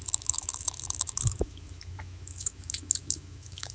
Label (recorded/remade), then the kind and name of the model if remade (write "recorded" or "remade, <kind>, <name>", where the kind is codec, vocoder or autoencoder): remade, autoencoder, DAC-VAE